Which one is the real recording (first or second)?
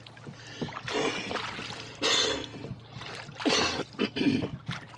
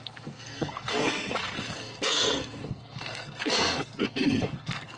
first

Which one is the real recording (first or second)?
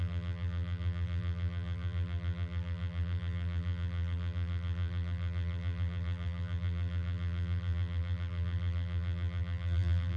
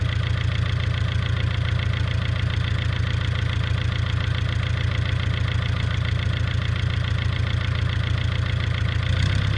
second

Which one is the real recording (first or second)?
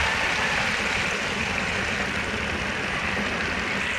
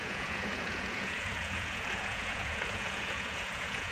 first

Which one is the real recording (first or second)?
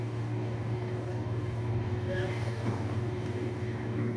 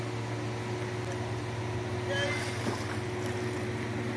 second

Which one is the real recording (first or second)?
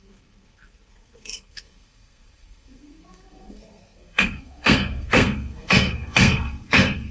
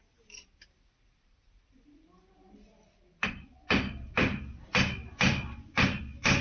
second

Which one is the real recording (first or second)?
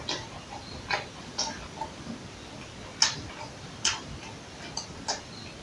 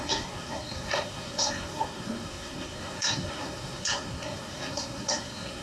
first